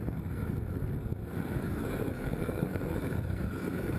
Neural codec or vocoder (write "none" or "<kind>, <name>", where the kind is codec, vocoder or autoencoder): codec, SNAC